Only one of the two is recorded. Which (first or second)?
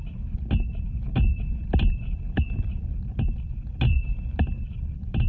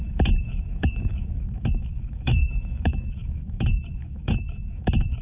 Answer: first